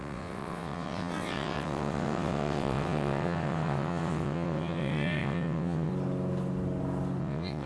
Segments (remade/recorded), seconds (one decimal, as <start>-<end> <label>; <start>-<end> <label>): 0.0-5.9 remade; 5.9-7.2 recorded; 7.2-7.7 remade